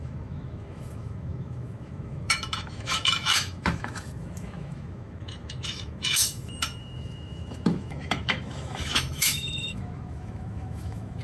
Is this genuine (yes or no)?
no